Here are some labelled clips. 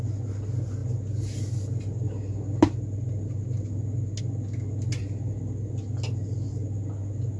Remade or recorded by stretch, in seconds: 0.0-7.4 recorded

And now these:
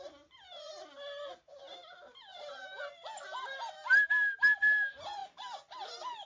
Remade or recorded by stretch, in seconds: 0.0-6.3 recorded

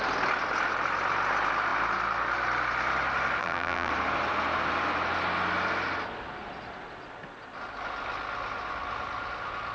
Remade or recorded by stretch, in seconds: 0.0-3.4 recorded; 3.4-3.9 remade; 3.9-9.7 recorded

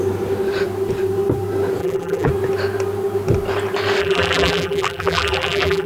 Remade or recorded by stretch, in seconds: 0.0-1.8 recorded; 1.8-2.3 remade; 2.3-4.0 recorded; 4.0-5.9 remade

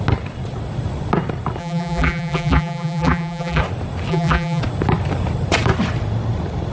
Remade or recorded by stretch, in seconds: 0.0-1.6 recorded; 1.6-3.6 remade; 3.6-4.1 recorded; 4.1-4.6 remade; 4.6-6.7 recorded